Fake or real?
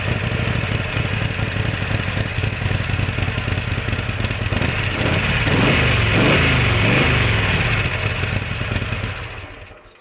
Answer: real